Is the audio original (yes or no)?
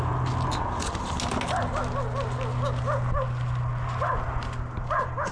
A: yes